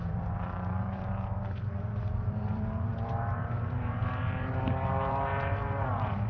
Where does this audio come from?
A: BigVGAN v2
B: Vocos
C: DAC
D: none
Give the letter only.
A